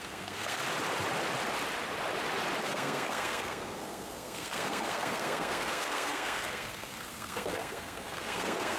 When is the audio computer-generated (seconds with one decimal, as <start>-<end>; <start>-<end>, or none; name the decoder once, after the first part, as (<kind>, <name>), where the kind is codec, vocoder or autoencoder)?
0.0-0.6 (codec, SNAC); 2.6-8.8